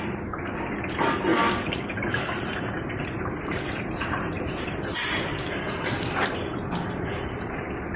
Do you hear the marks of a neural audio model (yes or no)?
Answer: yes